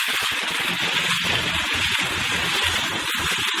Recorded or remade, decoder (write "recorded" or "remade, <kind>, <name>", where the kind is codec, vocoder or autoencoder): recorded